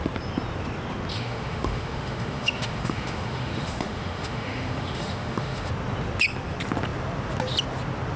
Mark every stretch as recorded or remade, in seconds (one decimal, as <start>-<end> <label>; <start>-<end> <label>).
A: 0.0-1.1 recorded; 1.1-5.7 remade; 5.7-8.2 recorded